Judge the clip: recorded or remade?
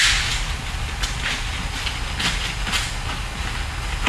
recorded